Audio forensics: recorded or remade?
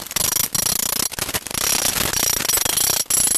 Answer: recorded